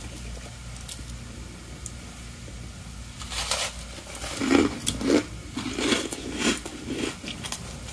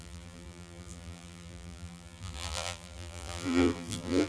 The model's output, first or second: second